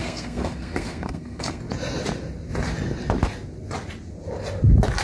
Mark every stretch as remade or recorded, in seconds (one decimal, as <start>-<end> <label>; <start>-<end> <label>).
0.0-1.6 remade; 1.6-5.0 recorded